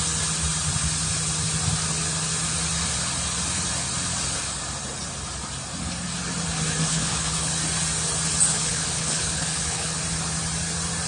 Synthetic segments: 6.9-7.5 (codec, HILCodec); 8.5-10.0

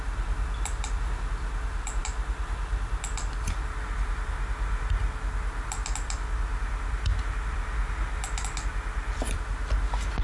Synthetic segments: none

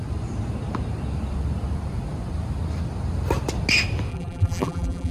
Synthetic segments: 4.1-5.1 (vocoder, BigVGAN v2)

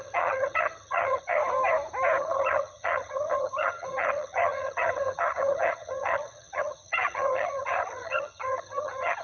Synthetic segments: 0.0-1.4 (vocoder, HiFi-GAN); 2.2-9.2

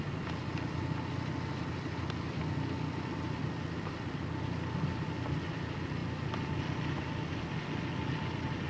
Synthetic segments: none